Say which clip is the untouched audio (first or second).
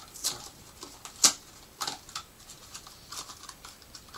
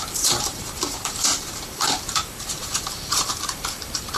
first